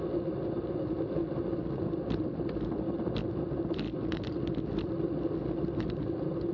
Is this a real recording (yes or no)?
yes